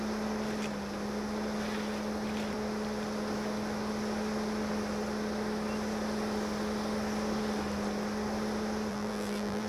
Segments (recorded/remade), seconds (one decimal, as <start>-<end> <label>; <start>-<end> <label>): 0.0-8.9 recorded; 8.9-9.7 remade